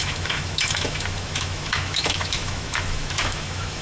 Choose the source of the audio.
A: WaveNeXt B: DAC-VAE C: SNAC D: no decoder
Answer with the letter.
B